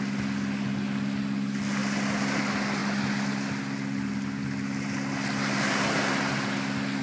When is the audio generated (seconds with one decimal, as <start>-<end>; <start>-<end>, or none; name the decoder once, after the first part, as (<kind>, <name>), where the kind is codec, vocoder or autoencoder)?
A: none